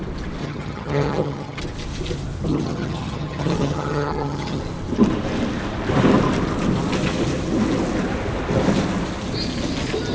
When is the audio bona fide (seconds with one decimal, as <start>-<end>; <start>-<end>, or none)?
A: 0.0-0.4; 1.6-2.5; 4.6-10.1